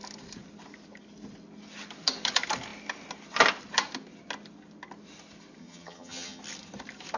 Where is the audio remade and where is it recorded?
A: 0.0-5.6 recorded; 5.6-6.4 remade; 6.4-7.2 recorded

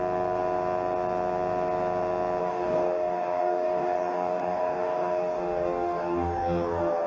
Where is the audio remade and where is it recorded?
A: 0.0-2.4 recorded; 2.4-7.1 remade

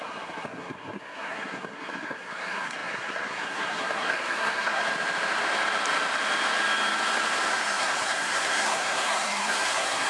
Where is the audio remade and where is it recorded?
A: 0.0-4.8 remade; 4.8-7.5 recorded; 7.5-10.1 remade

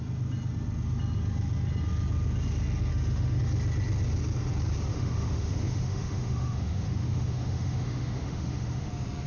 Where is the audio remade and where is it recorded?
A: 0.0-2.9 recorded; 2.9-3.4 remade; 3.4-4.9 recorded; 4.9-8.9 remade; 8.9-9.3 recorded

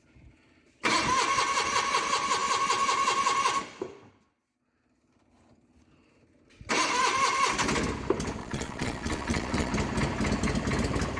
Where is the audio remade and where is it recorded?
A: 0.0-8.4 recorded; 8.4-9.7 remade; 9.7-11.2 recorded

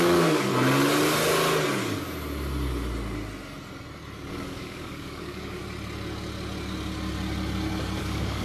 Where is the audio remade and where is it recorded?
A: 0.0-0.5 remade; 0.5-4.3 recorded; 4.3-5.6 remade; 5.6-8.0 recorded; 8.0-8.4 remade

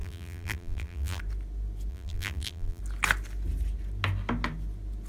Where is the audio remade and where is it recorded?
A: 0.0-1.2 remade; 1.2-1.9 recorded; 1.9-2.8 remade; 2.8-5.1 recorded

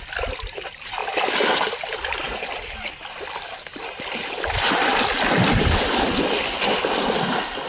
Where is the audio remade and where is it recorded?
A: 0.0-7.7 recorded